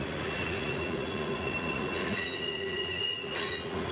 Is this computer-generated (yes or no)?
yes